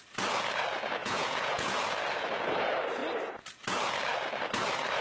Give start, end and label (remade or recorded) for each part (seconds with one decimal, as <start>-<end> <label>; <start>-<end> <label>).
0.0-1.0 recorded; 1.0-1.7 remade; 1.7-5.0 recorded